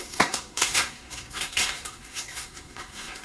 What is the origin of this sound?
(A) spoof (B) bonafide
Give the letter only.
A